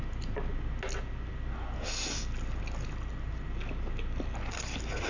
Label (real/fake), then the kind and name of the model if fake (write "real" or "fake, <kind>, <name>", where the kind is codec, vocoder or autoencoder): real